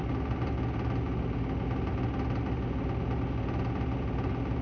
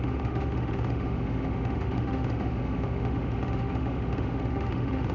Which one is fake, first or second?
second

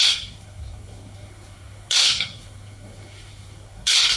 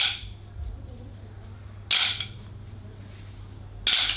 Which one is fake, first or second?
first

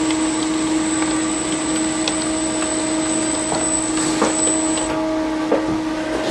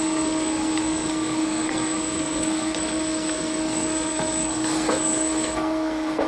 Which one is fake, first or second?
second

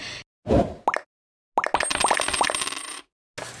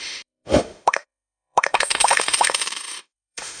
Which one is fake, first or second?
second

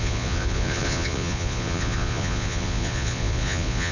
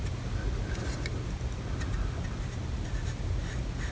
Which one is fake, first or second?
first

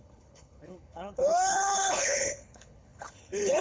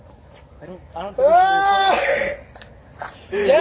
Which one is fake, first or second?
first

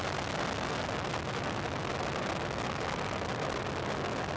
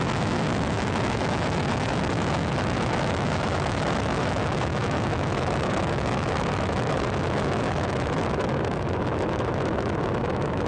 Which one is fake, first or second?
second